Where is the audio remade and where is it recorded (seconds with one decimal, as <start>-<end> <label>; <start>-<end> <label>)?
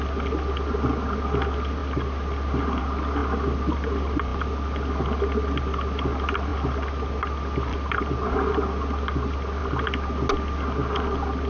0.0-11.5 recorded